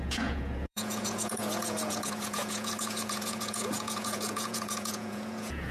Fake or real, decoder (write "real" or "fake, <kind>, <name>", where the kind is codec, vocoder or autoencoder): fake, vocoder, Vocos